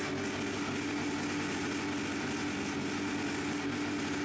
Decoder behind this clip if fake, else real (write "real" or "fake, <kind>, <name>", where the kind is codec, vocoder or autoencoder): real